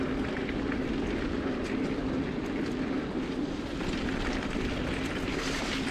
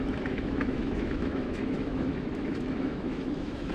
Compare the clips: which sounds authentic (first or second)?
first